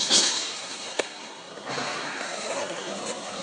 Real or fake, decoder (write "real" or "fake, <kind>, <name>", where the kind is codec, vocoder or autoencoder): fake, codec, SNAC